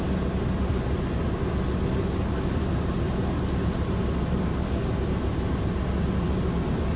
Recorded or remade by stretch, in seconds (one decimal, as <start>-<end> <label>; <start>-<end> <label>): 0.0-7.0 recorded

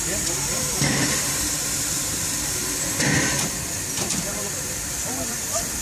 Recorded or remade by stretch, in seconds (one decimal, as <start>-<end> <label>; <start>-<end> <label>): 0.0-2.6 remade; 2.6-4.6 recorded; 4.6-5.8 remade

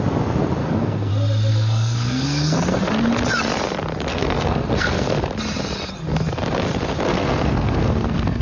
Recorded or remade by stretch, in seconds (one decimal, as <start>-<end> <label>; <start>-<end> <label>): 0.0-0.6 recorded; 0.6-1.1 remade; 1.1-1.5 recorded; 1.5-2.8 remade; 2.8-4.1 recorded; 4.1-5.3 remade; 5.3-7.1 recorded; 7.1-8.4 remade